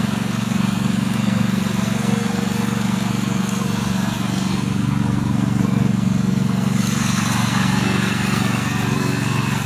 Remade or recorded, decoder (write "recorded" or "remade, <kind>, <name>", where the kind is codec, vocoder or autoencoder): remade, codec, SNAC